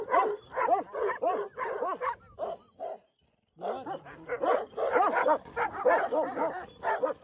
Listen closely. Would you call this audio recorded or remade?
recorded